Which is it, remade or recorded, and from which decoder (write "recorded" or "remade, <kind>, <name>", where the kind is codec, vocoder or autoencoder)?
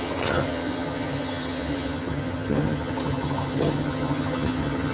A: remade, vocoder, HiFi-GAN